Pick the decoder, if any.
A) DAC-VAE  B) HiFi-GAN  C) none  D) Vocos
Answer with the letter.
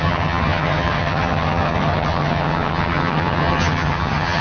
B